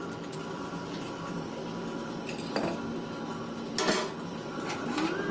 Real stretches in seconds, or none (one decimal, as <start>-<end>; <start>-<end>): 2.2-3.9